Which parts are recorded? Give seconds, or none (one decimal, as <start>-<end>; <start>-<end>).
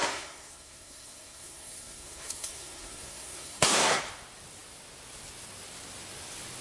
4.0-6.6